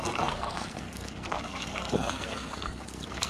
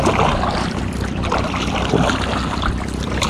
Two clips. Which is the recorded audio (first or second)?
second